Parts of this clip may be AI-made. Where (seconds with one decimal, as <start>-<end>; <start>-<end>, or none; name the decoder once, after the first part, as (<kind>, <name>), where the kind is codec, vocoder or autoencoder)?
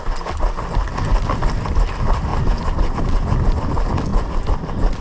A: none